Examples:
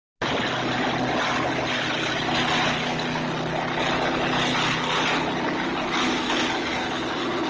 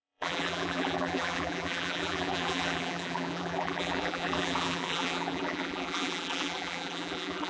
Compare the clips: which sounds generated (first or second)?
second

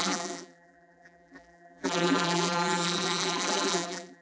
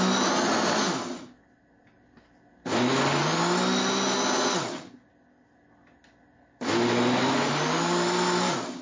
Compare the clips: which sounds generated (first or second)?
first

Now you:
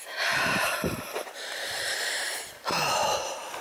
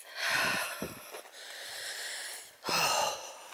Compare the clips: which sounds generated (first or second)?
first